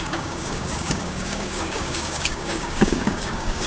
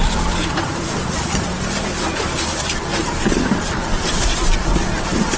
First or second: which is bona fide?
second